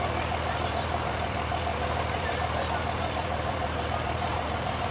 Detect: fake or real fake